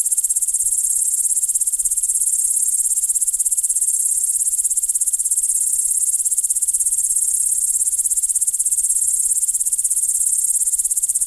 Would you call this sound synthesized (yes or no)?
no